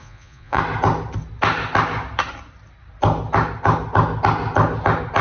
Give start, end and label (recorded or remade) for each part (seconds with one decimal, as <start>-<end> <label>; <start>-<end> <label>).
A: 0.0-0.6 remade; 0.6-5.2 recorded